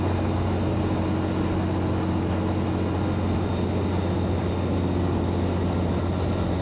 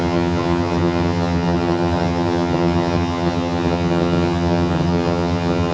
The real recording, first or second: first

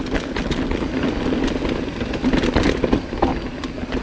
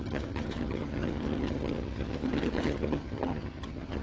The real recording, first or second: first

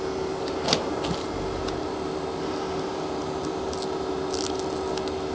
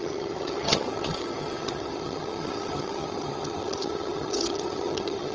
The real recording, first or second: first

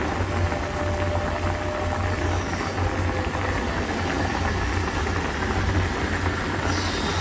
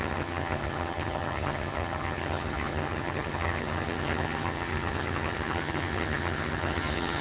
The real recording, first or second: first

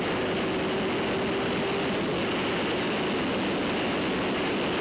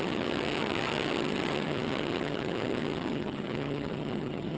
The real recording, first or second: first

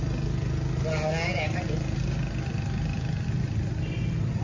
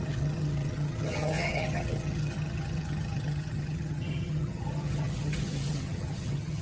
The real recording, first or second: first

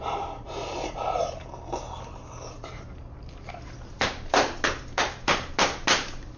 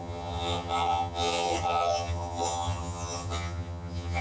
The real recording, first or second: first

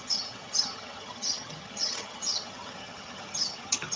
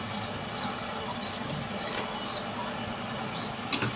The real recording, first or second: second